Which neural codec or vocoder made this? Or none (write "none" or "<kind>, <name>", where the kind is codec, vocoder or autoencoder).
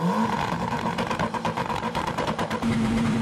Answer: vocoder, BigVGAN v2